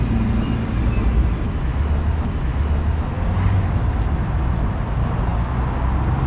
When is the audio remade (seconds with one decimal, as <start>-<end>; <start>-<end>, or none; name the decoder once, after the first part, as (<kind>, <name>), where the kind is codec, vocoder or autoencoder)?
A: none